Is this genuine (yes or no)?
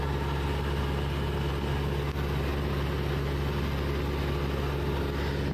yes